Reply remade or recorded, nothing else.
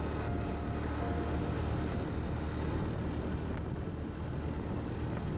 recorded